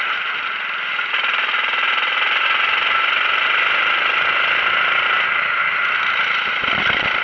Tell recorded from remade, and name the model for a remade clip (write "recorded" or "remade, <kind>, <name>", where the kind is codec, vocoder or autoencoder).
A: recorded